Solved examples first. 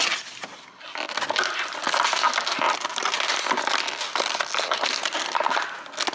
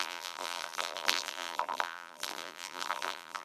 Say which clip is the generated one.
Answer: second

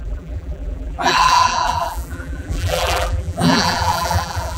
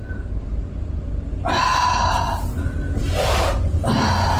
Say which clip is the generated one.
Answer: first